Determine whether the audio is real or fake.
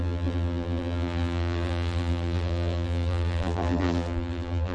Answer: fake